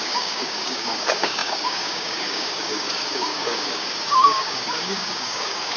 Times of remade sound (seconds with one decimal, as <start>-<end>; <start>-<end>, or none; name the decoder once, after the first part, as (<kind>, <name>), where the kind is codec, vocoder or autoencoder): 0.0-5.8 (codec, DAC)